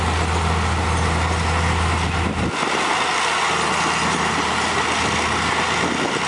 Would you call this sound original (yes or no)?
yes